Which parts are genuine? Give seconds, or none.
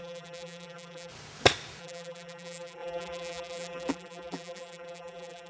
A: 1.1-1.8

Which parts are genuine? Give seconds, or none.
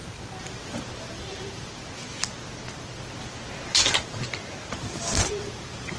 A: 1.8-4.7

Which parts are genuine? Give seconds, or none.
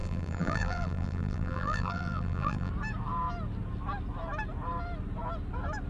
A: 2.7-5.9